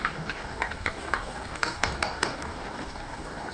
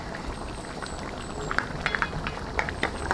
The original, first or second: second